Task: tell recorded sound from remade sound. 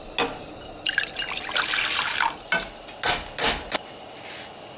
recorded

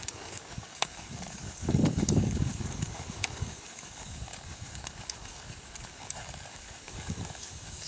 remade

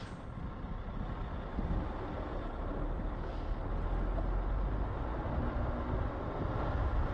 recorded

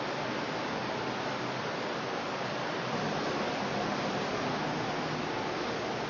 recorded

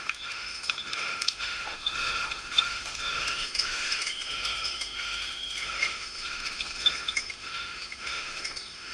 remade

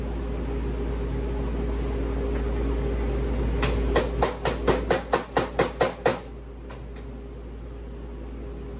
recorded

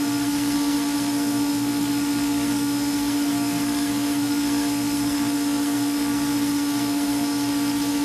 remade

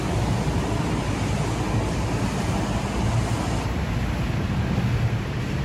recorded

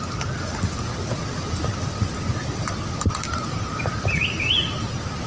recorded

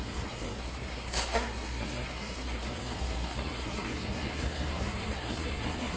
remade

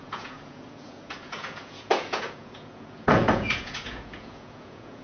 remade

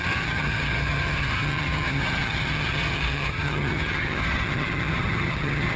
remade